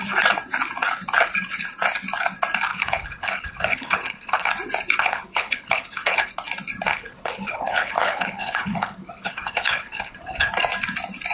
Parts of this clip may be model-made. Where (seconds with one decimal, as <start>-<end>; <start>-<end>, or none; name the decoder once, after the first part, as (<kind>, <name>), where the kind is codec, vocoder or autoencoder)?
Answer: 2.7-4.5 (codec, HILCodec); 5.0-6.3; 6.9-10.5